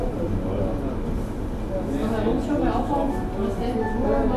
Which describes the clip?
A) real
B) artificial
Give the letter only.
A